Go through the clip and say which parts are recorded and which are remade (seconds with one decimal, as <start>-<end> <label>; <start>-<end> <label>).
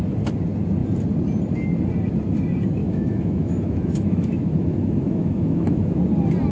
0.0-2.8 recorded; 2.8-6.0 remade; 6.0-6.5 recorded